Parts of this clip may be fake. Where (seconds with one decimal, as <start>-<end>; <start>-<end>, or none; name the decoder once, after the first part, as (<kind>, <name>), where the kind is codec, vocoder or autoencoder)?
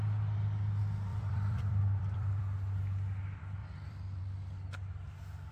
1.1-2.4 (vocoder, BigVGAN v2); 3.6-4.2